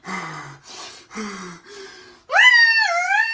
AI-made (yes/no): no